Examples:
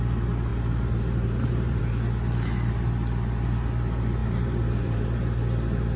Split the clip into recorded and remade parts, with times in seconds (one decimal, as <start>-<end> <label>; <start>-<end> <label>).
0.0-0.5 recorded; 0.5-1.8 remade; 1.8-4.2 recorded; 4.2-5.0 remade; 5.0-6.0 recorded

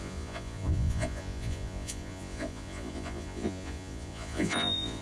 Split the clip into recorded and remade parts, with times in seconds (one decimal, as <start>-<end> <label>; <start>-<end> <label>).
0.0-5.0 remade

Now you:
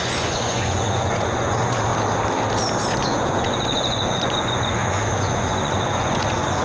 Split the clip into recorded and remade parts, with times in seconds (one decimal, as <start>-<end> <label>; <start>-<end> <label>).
0.0-1.9 remade; 1.9-2.9 recorded; 2.9-6.6 remade